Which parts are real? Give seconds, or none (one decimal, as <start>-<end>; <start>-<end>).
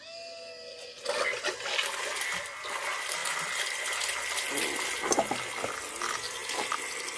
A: 0.0-7.2